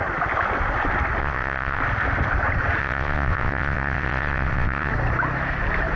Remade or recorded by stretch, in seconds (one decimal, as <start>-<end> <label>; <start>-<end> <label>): 0.0-1.2 recorded; 1.2-1.8 remade; 1.8-2.8 recorded; 2.8-4.9 remade; 4.9-6.0 recorded